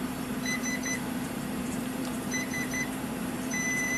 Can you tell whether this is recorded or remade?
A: remade